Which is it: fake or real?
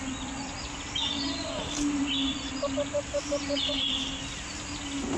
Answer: real